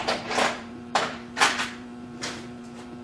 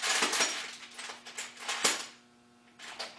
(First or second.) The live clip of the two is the second